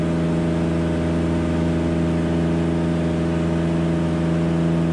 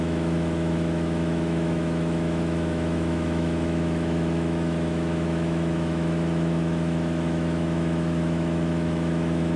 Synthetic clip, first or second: second